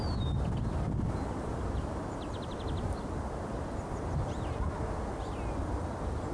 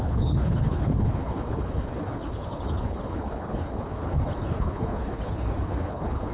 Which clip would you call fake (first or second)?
second